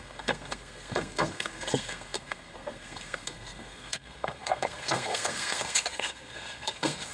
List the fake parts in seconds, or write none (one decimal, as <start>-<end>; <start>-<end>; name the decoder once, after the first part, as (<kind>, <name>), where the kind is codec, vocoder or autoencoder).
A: 0.0-7.1 (codec, SNAC)